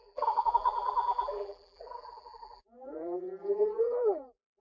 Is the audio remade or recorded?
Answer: remade